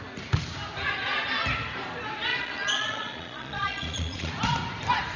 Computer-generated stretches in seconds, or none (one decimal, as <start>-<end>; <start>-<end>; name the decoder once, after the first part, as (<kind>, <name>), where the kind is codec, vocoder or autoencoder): 2.3-4.3 (vocoder, Vocos)